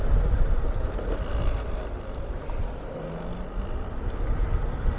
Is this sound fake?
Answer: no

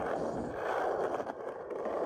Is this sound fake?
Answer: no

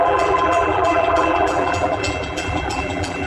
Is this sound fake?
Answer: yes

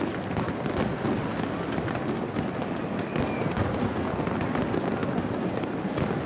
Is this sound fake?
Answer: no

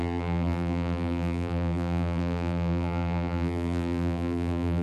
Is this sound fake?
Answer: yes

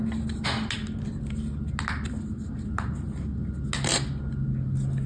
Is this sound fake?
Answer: no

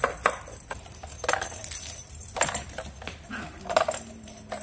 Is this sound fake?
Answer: no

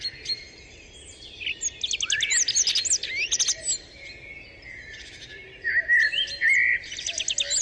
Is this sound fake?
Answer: no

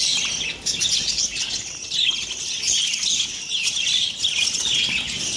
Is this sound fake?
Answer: no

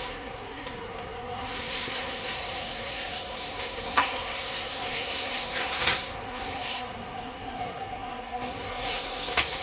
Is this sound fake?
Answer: yes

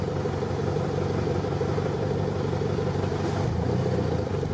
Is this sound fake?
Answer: yes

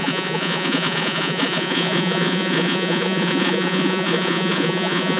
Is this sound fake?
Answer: yes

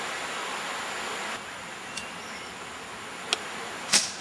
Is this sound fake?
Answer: no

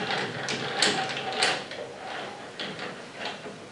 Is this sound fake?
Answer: no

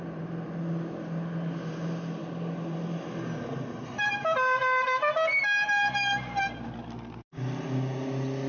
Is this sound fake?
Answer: no